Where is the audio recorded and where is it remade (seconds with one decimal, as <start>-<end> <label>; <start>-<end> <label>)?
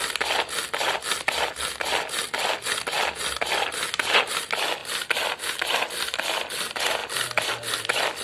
0.0-8.2 recorded